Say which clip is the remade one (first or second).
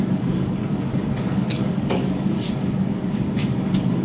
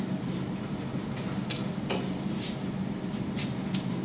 first